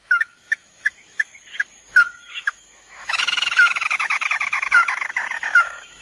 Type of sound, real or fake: fake